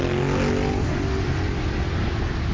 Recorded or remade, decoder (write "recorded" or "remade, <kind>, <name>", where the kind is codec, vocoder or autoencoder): recorded